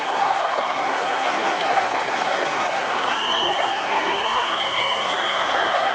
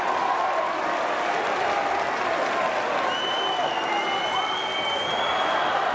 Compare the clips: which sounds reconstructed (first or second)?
first